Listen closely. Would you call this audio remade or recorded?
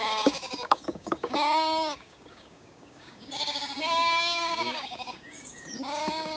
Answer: remade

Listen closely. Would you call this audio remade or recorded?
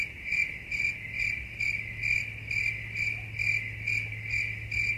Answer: recorded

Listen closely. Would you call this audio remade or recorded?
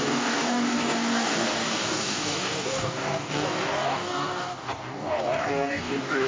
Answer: remade